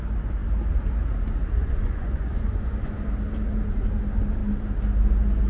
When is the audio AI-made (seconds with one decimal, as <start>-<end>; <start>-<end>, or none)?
1.6-3.1